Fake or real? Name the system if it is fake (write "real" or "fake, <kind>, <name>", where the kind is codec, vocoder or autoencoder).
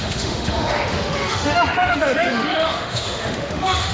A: fake, autoencoder, DAC-VAE